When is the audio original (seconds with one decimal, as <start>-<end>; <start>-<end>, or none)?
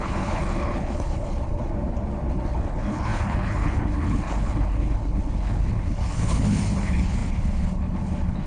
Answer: 1.7-2.3